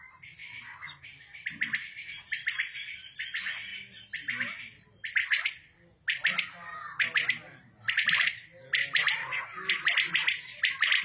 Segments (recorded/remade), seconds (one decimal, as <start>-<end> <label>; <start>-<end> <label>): 0.0-11.0 recorded